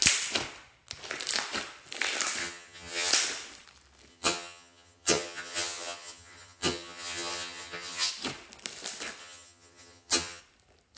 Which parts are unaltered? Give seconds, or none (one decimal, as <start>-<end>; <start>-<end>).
0.0-2.4; 3.1-4.1; 8.1-9.2; 10.4-11.0